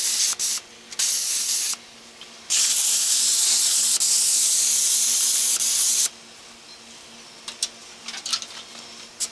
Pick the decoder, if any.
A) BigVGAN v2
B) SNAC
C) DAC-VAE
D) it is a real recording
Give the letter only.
D